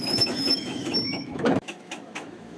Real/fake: fake